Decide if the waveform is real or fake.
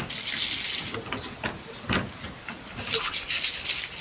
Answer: real